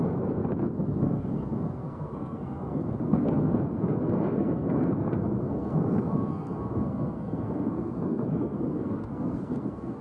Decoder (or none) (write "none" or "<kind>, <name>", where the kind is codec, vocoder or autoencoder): codec, SNAC